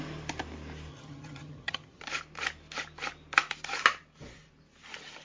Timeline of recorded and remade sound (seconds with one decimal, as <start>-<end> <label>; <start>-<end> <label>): 0.0-0.9 recorded; 0.9-2.0 remade; 2.0-5.2 recorded